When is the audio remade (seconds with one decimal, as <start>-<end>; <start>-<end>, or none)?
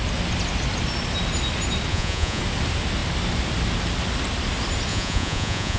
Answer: 1.9-2.4; 4.9-5.8